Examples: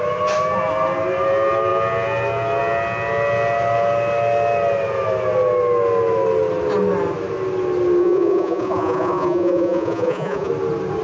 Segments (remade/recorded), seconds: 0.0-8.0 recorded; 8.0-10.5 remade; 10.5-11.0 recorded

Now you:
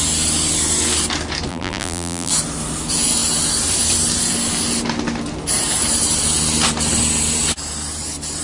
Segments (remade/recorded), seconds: 0.0-1.5 recorded; 1.5-2.3 remade; 2.3-8.4 recorded

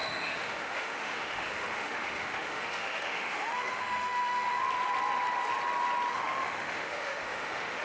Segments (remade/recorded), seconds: 0.0-4.6 remade; 4.6-6.1 recorded; 6.1-7.8 remade

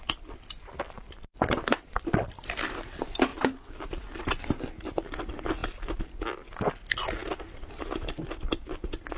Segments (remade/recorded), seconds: 0.0-9.2 recorded